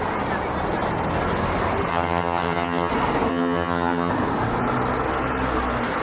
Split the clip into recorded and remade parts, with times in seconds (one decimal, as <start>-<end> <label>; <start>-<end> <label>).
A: 0.0-1.9 recorded; 1.9-2.9 remade; 2.9-3.3 recorded; 3.3-4.1 remade; 4.1-6.0 recorded